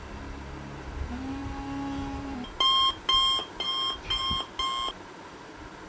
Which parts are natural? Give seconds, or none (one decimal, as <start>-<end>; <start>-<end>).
0.0-5.9